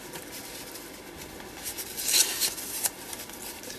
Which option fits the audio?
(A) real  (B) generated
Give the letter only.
A